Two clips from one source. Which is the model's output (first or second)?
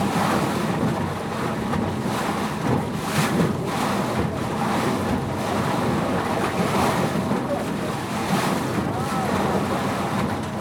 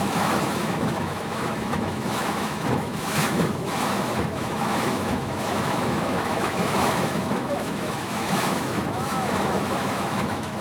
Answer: second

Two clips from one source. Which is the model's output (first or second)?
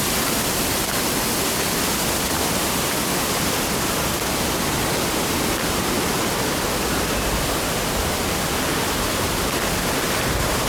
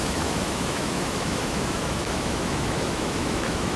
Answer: second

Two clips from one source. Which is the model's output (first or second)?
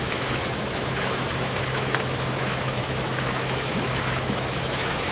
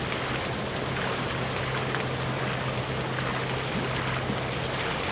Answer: first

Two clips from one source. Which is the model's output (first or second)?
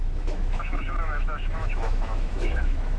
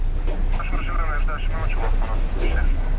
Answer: first